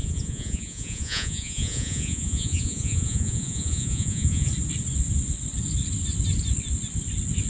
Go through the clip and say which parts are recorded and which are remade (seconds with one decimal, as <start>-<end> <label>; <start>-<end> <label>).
0.0-4.5 remade; 4.5-7.5 recorded